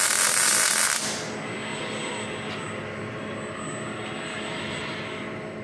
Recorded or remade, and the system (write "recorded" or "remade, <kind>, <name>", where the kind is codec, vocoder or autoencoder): recorded